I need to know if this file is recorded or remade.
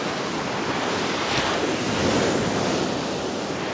recorded